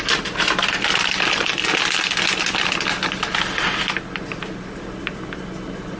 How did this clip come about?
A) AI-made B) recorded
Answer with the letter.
B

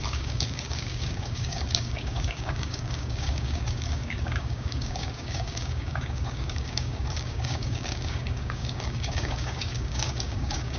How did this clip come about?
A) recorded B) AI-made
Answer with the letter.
B